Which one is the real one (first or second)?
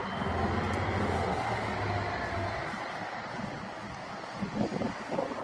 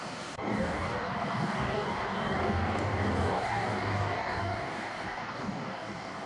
first